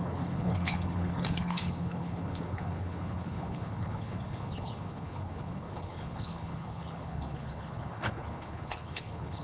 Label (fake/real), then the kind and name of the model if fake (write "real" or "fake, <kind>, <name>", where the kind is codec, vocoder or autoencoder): fake, codec, HILCodec